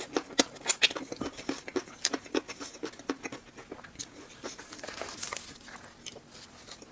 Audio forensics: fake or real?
real